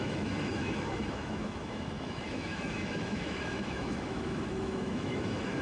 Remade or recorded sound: remade